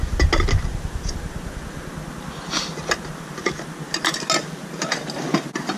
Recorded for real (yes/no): yes